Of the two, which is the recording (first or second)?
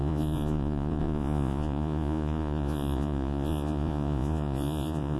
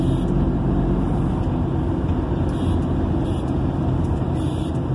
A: second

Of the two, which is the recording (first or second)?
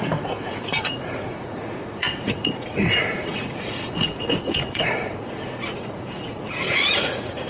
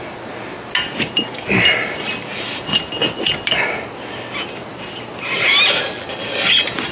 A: second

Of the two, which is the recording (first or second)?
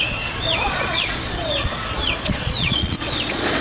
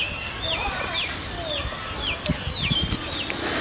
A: second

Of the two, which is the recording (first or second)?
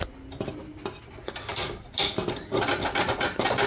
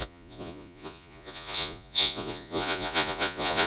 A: first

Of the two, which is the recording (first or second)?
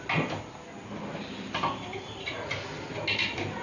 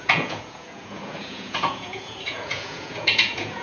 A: first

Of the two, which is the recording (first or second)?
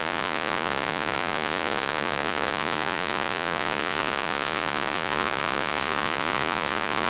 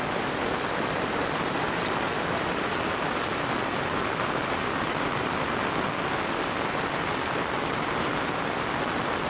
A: second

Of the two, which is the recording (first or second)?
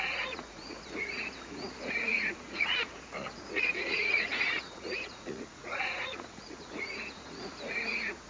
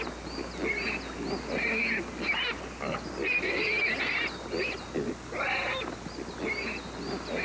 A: second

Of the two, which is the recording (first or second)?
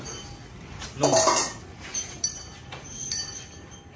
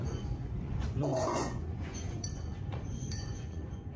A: first